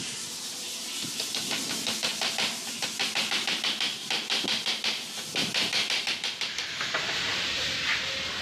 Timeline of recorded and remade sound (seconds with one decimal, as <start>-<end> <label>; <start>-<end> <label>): 0.0-2.1 remade; 2.1-3.9 recorded; 3.9-8.4 remade